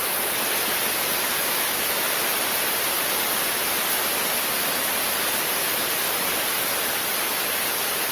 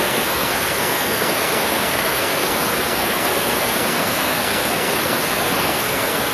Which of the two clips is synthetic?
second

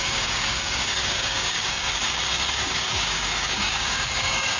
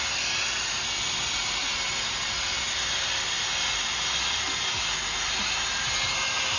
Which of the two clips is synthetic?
first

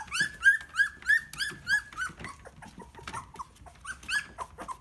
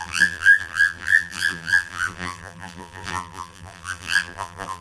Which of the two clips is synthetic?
second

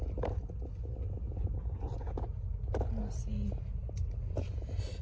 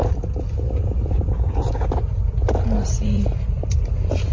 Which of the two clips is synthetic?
second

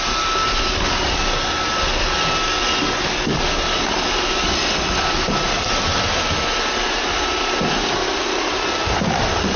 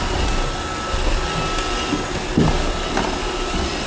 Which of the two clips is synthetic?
first